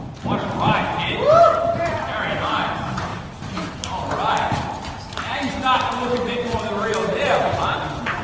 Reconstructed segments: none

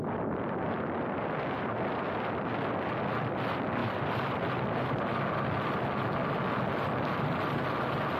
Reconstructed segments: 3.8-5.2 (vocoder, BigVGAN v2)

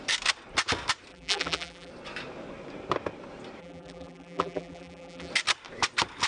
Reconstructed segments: 1.1-1.9 (vocoder, BigVGAN v2); 3.6-5.3